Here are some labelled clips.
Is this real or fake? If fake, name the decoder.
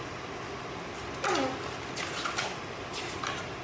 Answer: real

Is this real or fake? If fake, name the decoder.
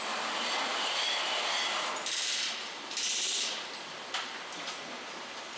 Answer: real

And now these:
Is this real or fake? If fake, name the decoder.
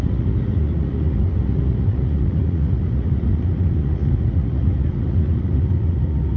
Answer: fake, vocoder, Vocos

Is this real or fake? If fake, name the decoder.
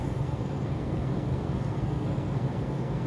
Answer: fake, codec, SNAC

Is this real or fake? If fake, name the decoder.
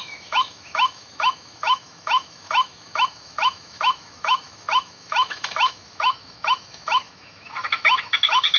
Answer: fake, autoencoder, DAC-VAE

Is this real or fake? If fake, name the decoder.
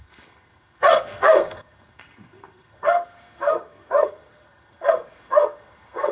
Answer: fake, codec, SNAC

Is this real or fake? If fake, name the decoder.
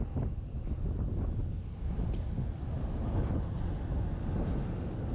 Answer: real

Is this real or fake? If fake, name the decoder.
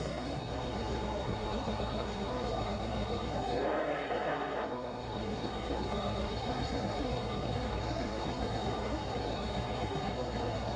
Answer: fake, codec, SNAC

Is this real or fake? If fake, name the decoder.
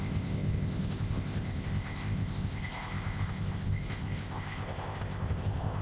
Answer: fake, codec, ZipCodec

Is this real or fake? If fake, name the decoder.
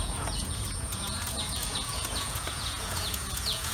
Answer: fake, vocoder, Vocos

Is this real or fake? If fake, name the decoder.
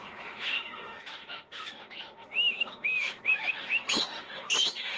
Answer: fake, autoencoder, DAC-VAE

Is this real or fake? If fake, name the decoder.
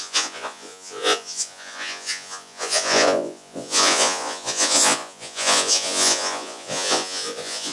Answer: fake, vocoder, Vocos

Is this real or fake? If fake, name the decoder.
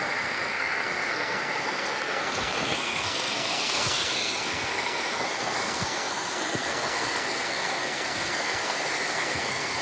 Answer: fake, codec, SNAC